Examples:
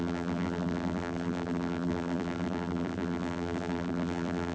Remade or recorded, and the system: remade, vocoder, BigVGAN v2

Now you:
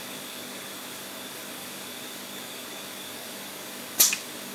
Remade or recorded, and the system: remade, codec, DAC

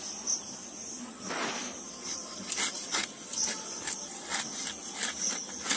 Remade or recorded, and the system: recorded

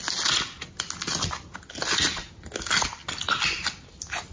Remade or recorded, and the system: recorded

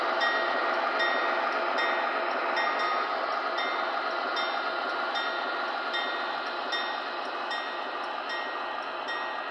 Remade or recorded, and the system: recorded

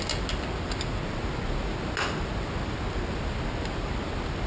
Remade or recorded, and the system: recorded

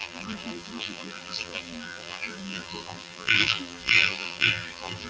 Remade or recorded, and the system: remade, vocoder, BigVGAN v2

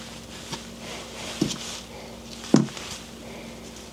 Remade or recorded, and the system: recorded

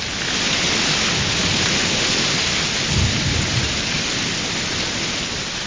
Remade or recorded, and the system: recorded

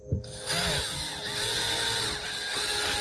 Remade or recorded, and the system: recorded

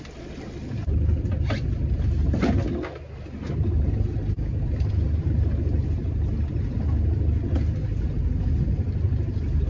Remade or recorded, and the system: recorded